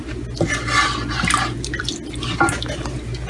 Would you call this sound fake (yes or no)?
no